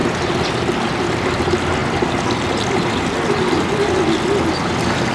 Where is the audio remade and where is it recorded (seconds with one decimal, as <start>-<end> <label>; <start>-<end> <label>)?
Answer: 0.0-5.1 recorded